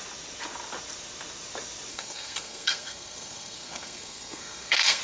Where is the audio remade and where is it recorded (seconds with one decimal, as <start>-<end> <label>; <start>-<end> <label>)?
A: 0.0-1.9 recorded; 1.9-5.0 remade